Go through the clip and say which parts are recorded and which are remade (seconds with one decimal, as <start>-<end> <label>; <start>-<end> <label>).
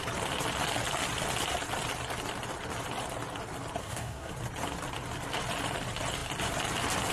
0.0-3.8 recorded; 3.8-4.3 remade; 4.3-7.1 recorded